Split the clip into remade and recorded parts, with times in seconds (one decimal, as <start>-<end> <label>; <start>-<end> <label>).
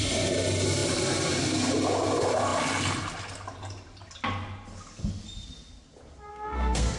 0.0-6.3 recorded; 6.3-7.0 remade